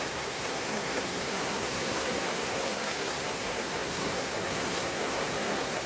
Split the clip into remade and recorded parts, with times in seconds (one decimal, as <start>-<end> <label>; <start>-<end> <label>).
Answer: 0.0-5.9 remade